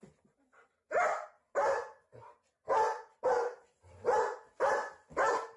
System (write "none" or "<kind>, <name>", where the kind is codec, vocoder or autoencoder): none